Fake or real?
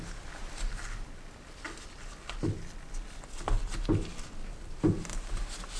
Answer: real